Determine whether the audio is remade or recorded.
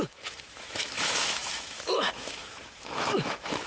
remade